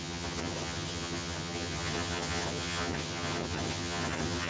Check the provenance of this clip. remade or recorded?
remade